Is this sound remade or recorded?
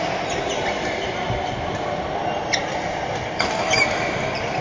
recorded